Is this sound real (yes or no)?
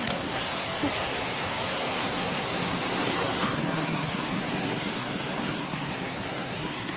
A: no